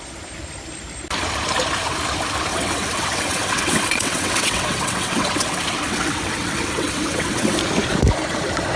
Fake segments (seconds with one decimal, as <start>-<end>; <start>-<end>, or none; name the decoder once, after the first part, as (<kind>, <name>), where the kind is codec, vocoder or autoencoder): 2.5-7.6 (vocoder, WaveNeXt)